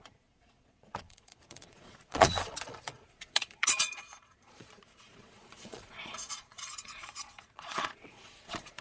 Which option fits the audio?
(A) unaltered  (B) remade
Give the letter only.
B